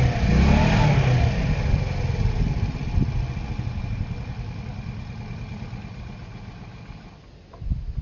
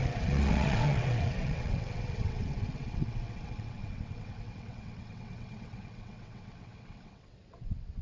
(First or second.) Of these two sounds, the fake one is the second